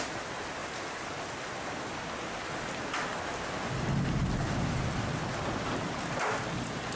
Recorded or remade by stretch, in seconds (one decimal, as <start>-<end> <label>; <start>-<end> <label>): 0.0-7.0 recorded